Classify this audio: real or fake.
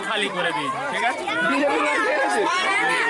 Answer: fake